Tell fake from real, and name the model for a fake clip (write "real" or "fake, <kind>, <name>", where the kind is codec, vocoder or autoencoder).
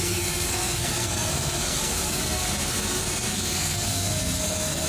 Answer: fake, codec, SNAC